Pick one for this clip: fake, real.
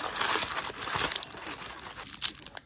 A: real